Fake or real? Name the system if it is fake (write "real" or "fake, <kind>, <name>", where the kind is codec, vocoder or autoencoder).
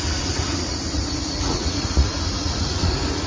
fake, vocoder, Vocos